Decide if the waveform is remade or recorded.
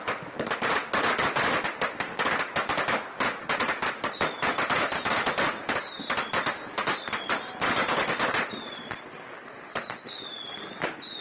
recorded